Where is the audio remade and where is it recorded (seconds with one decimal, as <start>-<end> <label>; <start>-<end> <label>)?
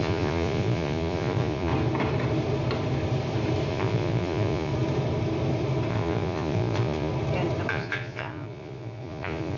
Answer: 0.0-1.7 remade; 1.7-3.7 recorded; 3.7-4.7 remade; 4.7-5.9 recorded; 5.9-7.1 remade; 7.1-7.7 recorded; 7.7-9.6 remade